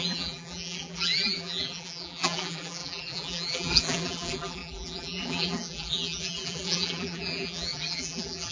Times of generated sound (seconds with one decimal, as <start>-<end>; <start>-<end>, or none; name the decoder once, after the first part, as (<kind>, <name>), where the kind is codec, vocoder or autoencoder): 0.0-8.5 (vocoder, BigVGAN v2)